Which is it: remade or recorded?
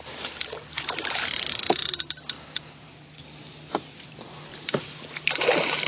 recorded